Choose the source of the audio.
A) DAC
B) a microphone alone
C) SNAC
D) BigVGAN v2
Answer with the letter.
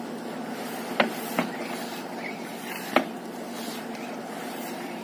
D